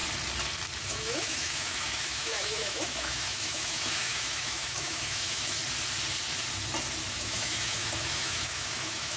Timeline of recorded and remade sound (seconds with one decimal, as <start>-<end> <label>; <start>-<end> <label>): 0.0-0.8 recorded; 0.8-5.6 remade; 5.6-7.1 recorded; 7.1-9.2 remade